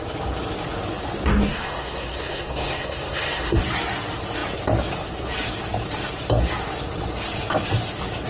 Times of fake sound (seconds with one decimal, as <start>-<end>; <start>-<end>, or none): 1.5-3.6